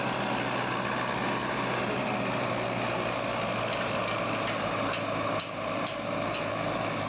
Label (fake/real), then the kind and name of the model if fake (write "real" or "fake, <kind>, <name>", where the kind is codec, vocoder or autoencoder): real